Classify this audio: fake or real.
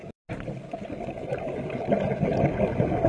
real